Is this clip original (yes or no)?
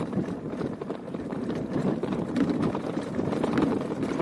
no